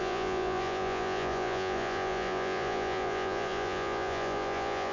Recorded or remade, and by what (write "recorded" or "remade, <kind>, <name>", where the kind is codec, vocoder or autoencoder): remade, vocoder, Vocos